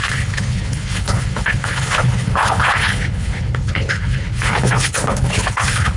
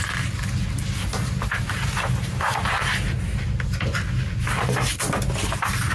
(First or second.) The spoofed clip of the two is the first